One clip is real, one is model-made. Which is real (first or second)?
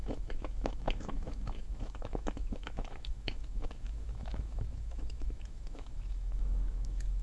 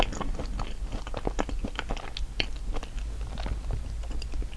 second